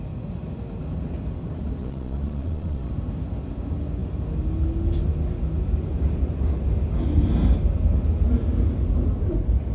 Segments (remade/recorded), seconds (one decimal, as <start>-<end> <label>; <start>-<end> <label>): 0.0-1.8 recorded; 1.8-2.9 remade; 2.9-9.7 recorded